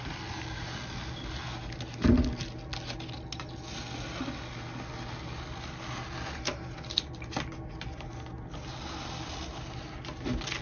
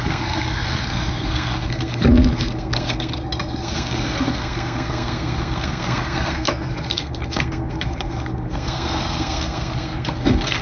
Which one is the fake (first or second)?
second